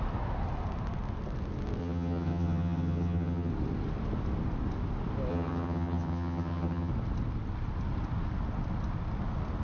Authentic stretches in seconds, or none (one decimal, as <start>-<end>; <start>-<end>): 0.0-1.8; 3.5-5.3; 6.9-9.6